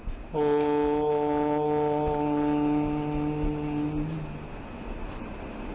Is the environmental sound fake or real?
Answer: real